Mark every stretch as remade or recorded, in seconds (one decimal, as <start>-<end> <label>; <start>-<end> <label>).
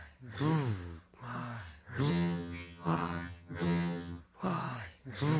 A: 0.0-2.1 recorded; 2.1-4.2 remade; 4.2-5.4 recorded